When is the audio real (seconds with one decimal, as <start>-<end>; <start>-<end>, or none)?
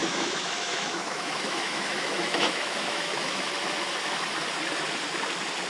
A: 3.4-5.7